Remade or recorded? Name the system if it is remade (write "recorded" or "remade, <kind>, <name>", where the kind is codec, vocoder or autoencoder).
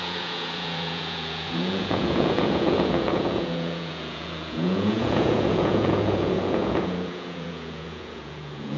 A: remade, vocoder, Vocos